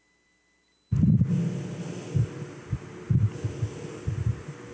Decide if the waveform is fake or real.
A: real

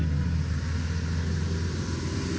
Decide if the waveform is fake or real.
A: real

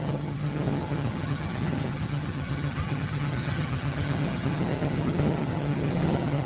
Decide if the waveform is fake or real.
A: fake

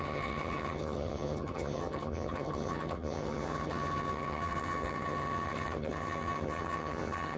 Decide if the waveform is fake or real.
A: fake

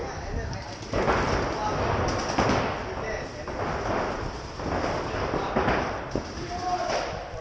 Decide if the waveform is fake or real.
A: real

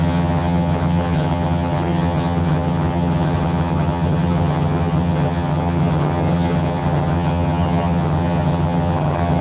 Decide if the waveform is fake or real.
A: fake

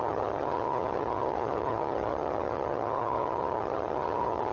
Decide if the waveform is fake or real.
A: fake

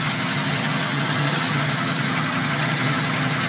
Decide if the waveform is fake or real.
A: fake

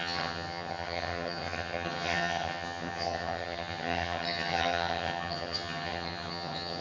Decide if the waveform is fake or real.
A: fake